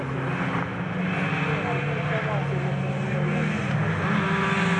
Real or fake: real